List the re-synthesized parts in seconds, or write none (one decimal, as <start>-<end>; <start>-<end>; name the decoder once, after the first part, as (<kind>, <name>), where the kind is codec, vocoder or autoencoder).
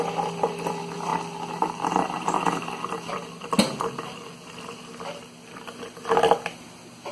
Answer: none